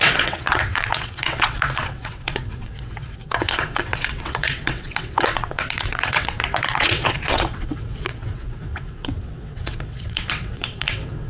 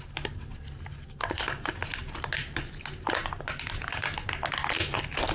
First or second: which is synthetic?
first